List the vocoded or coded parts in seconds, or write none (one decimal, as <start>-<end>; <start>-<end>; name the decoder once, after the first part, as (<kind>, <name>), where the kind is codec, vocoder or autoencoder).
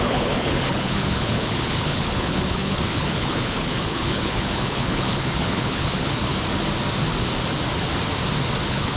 0.0-6.3 (codec, HILCodec); 8.6-9.0